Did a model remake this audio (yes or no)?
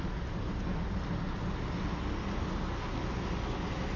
no